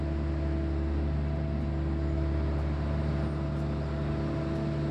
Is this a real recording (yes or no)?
yes